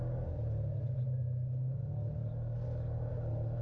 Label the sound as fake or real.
real